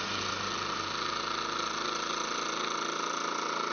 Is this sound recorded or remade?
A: recorded